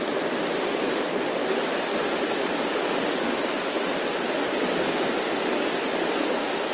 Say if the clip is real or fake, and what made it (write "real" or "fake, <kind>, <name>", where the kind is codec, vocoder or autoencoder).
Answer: real